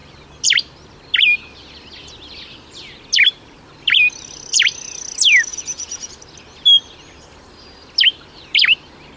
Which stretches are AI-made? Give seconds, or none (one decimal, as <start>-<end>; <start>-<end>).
5.5-6.1